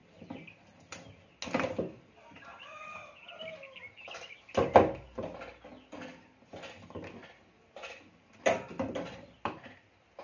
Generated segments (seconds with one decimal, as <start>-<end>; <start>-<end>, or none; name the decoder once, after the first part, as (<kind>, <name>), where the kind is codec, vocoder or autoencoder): none

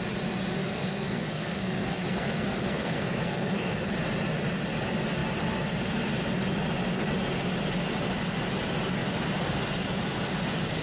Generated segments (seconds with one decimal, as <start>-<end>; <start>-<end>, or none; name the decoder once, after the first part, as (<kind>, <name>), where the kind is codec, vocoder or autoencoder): 0.6-3.9 (codec, SNAC)

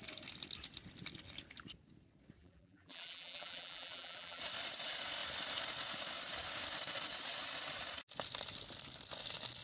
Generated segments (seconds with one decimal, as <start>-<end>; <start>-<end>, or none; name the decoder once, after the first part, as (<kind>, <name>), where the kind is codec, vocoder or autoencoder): 2.4-4.4 (vocoder, BigVGAN v2)